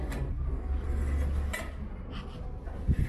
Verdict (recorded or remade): recorded